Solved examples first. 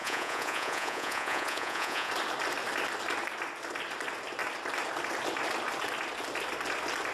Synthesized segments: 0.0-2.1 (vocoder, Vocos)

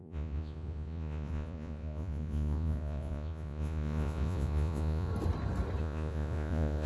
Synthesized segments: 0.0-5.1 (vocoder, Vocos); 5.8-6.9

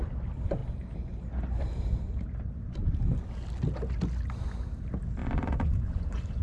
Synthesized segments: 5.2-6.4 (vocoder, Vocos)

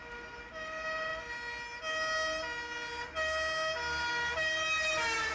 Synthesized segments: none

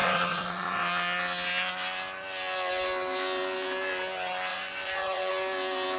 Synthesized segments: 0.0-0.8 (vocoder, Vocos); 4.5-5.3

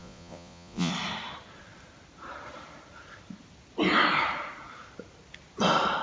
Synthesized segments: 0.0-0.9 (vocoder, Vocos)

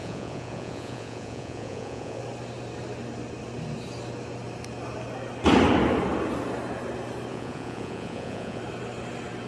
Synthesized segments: 0.0-2.2 (vocoder, Vocos); 7.3-8.6

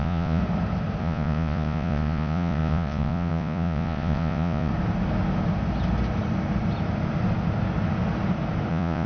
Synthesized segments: 0.0-0.4 (vocoder, Vocos); 1.0-4.7; 8.7-9.1